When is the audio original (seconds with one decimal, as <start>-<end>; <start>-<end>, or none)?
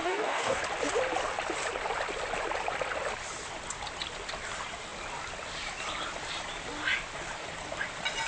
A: 0.6-8.3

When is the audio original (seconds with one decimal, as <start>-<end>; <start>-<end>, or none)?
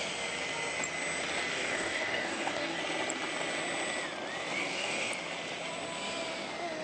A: 0.0-1.5; 2.8-4.6; 5.1-6.8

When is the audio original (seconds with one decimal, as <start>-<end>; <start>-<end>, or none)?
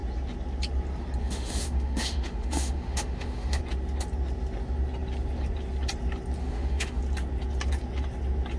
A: 0.0-1.2; 3.6-6.4; 7.0-8.6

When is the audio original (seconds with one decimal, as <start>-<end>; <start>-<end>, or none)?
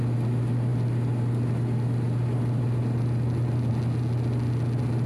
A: 0.0-5.1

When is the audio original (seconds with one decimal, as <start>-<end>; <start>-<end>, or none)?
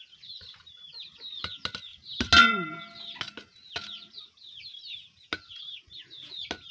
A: 0.0-6.7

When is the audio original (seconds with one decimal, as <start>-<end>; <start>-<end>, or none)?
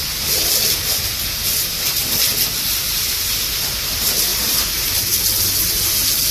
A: 0.0-4.3; 5.2-6.3